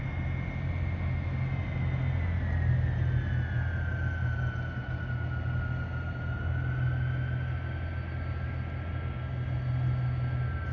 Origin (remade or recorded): recorded